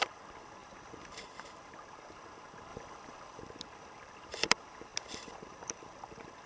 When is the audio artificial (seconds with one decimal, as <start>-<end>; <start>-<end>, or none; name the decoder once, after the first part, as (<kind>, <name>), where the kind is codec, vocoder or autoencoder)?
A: 0.6-1.1 (vocoder, BigVGAN v2); 2.7-3.4; 4.9-5.8